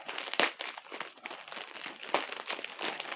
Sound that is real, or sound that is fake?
real